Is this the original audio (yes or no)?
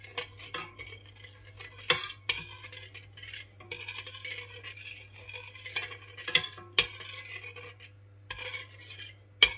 yes